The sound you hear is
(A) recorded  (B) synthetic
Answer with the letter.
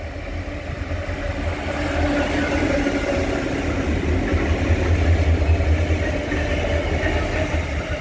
A